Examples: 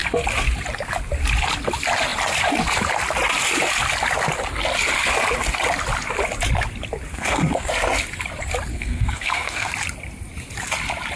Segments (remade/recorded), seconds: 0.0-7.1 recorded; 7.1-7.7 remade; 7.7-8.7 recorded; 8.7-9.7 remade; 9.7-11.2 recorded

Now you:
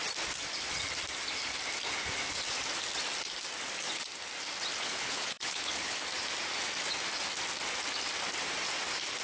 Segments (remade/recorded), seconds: 0.0-4.7 recorded; 4.7-6.0 remade; 6.0-9.2 recorded

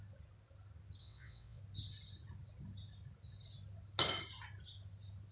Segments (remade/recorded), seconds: 0.0-1.0 recorded; 1.0-1.6 remade; 1.6-5.3 recorded

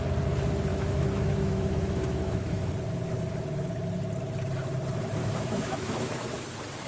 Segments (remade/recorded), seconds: 0.0-0.7 recorded; 0.7-2.7 remade; 2.7-5.2 recorded; 5.2-6.3 remade; 6.3-6.9 recorded

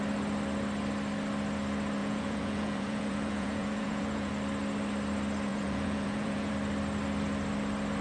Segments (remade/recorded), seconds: 0.0-2.0 recorded; 2.0-4.3 remade; 4.3-5.5 recorded; 5.5-6.5 remade; 6.5-8.0 recorded